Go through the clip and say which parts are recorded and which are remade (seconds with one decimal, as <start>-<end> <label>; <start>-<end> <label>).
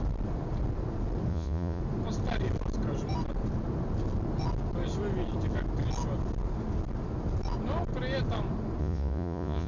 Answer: 0.0-1.3 recorded; 1.3-1.8 remade; 1.8-8.8 recorded; 8.8-9.7 remade